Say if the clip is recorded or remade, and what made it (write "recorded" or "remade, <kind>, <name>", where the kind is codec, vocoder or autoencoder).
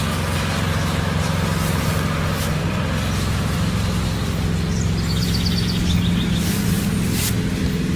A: recorded